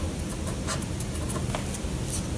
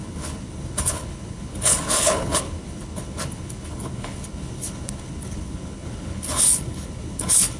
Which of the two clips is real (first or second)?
first